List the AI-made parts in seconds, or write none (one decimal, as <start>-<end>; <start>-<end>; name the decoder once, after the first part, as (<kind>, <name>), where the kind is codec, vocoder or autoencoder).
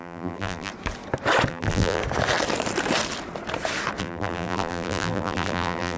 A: 0.0-0.7 (vocoder, BigVGAN v2); 1.5-2.0; 4.0-6.0